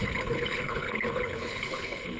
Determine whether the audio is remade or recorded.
remade